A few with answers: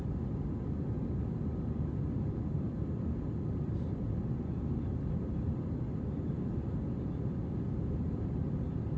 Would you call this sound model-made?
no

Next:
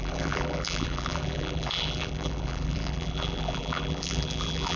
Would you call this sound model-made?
yes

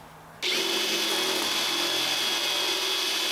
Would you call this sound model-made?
no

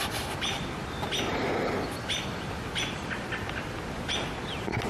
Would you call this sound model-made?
no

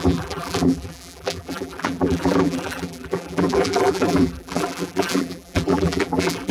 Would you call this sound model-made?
yes